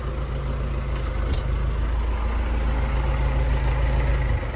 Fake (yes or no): no